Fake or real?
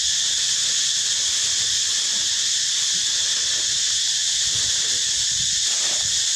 real